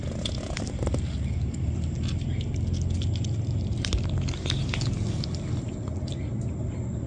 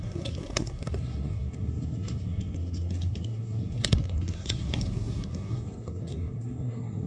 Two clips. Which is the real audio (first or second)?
first